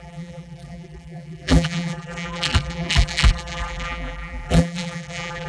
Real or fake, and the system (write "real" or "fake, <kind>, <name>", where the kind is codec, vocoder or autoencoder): fake, vocoder, BigVGAN v2